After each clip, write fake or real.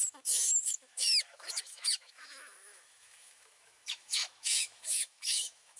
fake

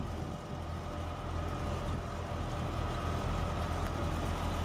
real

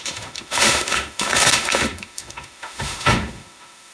fake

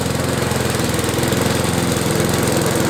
real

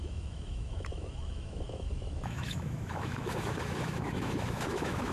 fake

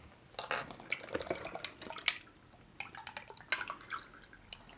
real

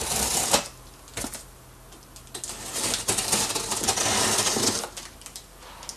real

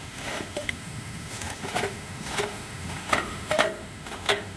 fake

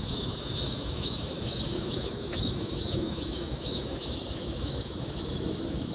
fake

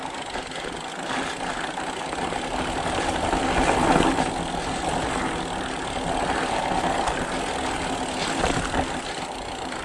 real